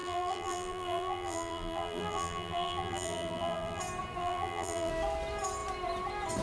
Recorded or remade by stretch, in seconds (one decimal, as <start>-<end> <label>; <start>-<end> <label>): 0.0-3.8 remade; 3.8-4.2 recorded; 4.2-4.9 remade; 4.9-6.4 recorded